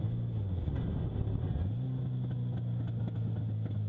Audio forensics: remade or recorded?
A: recorded